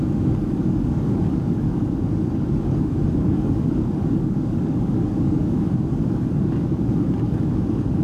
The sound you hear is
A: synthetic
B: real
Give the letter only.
A